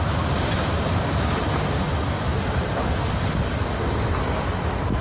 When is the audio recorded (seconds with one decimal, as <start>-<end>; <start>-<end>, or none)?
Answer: 0.0-5.0